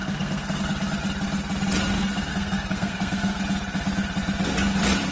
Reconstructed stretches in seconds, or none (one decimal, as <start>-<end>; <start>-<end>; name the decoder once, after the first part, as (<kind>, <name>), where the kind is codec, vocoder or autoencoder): 0.0-0.6 (codec, SNAC); 2.3-3.4